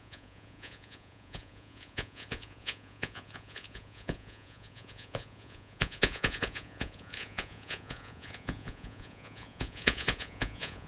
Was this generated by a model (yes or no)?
yes